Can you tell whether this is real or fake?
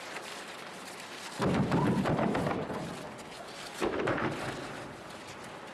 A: real